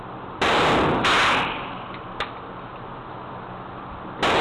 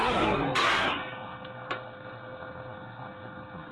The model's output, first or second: second